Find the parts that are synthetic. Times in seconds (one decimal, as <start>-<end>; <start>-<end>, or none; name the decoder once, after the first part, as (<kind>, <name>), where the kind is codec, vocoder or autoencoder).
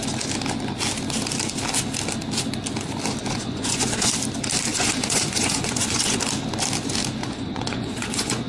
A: 3.2-4.1 (vocoder, Vocos); 4.7-6.2; 7.2-8.5